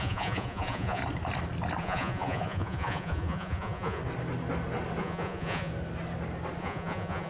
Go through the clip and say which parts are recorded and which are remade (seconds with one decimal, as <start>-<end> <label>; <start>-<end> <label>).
0.0-1.0 remade; 1.0-1.8 recorded; 1.8-4.0 remade; 4.0-5.0 recorded; 5.0-5.7 remade; 5.7-6.6 recorded; 6.6-7.3 remade